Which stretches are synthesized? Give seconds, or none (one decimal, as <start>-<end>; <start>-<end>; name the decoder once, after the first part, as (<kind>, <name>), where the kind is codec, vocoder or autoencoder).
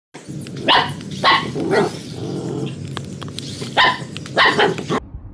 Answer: none